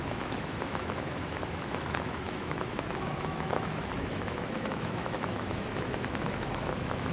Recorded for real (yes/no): no